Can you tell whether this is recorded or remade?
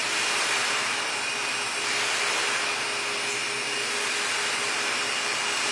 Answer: recorded